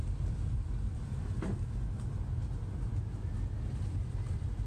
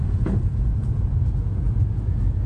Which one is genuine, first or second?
first